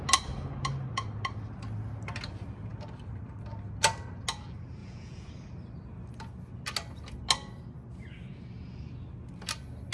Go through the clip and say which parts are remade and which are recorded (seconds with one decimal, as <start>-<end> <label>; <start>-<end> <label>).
0.0-4.8 recorded; 4.8-5.3 remade; 5.3-9.9 recorded